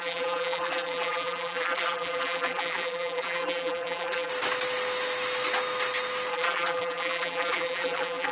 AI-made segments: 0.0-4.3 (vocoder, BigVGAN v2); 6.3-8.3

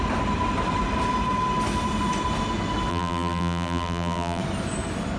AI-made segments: 2.9-4.4 (vocoder, BigVGAN v2)

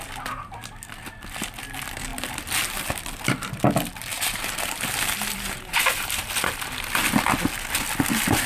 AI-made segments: 4.1-6.3 (vocoder, BigVGAN v2)